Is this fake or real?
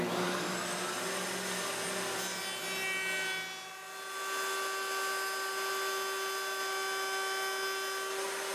real